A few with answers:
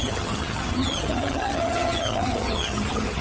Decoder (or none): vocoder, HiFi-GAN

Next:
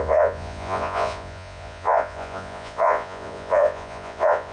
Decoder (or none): vocoder, Vocos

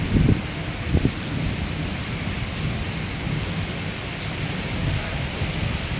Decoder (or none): none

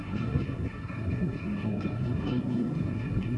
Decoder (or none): codec, SNAC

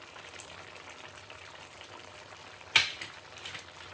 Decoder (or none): none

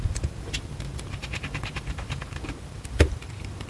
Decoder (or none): vocoder, BigVGAN v2